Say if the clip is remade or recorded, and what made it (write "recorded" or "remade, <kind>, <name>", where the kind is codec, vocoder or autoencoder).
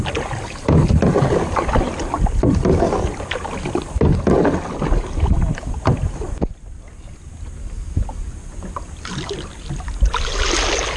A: recorded